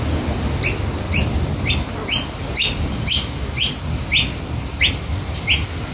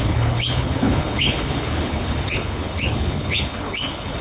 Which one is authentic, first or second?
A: first